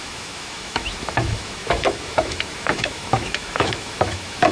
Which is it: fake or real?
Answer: fake